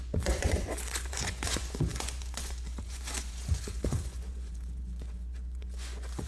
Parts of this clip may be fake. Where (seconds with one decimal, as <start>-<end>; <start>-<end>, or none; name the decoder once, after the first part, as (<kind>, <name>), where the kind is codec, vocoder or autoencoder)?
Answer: 0.0-6.3 (vocoder, Vocos)